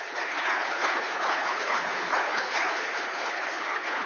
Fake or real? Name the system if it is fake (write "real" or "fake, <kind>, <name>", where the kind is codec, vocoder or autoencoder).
fake, codec, HILCodec